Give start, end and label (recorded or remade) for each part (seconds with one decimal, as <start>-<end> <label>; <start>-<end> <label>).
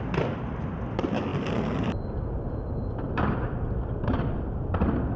0.0-5.2 recorded